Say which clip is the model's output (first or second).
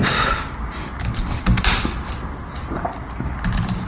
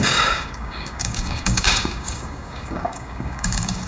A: second